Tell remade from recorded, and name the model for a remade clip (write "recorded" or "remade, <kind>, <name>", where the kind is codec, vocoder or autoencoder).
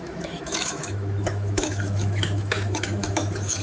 remade, autoencoder, DAC-VAE